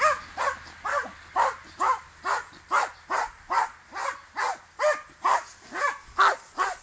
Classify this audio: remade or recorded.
recorded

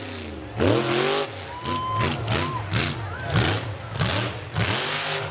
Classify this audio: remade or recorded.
recorded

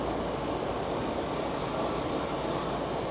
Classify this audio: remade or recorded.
recorded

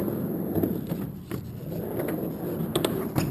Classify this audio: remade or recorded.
recorded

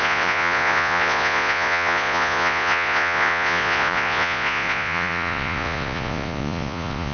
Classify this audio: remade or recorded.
remade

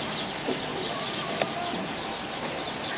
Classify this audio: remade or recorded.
recorded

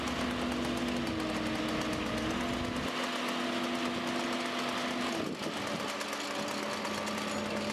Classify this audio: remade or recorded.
recorded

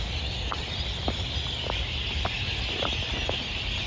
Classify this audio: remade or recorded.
recorded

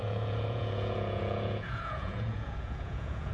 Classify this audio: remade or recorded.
remade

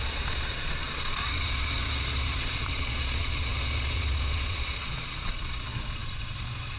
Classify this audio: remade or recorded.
remade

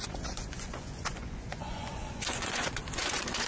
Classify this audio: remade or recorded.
remade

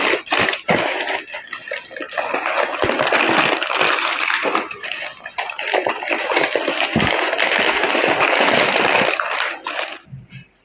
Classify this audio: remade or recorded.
recorded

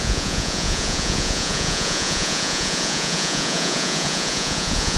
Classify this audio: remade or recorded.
remade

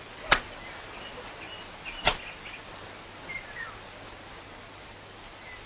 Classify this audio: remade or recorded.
recorded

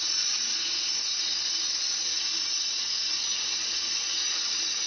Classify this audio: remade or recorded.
remade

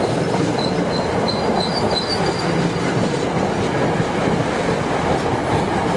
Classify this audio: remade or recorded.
recorded